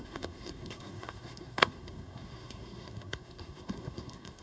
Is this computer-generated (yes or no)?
yes